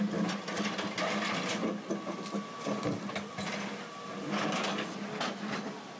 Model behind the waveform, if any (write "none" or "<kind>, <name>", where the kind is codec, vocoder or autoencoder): none